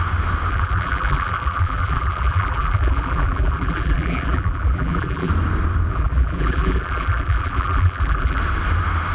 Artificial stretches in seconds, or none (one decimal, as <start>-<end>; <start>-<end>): 0.5-5.3; 5.9-8.4